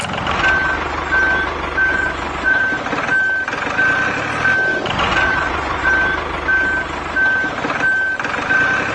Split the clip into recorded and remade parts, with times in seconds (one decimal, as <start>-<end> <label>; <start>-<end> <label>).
0.0-1.9 recorded; 1.9-2.6 remade; 2.6-4.7 recorded; 4.7-5.9 remade; 5.9-8.9 recorded